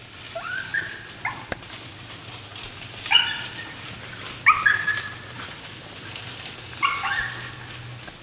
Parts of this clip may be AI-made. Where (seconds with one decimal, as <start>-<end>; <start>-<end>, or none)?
none